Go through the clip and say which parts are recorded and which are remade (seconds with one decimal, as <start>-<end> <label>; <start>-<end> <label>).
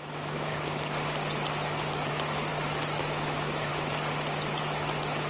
0.0-0.5 remade; 0.5-2.1 recorded; 2.1-2.5 remade; 2.5-3.0 recorded; 3.0-3.7 remade; 3.7-4.6 recorded; 4.6-5.3 remade